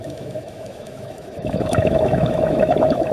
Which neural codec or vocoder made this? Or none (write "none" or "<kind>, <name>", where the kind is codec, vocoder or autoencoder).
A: autoencoder, DAC-VAE